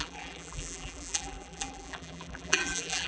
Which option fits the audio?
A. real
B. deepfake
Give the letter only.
B